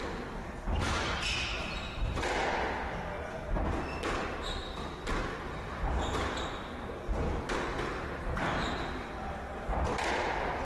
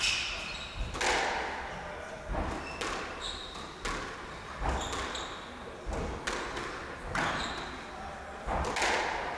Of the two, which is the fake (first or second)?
first